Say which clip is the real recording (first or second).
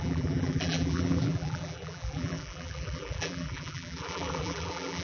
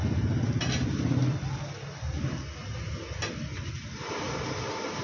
second